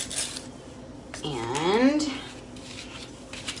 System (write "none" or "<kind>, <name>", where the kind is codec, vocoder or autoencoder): none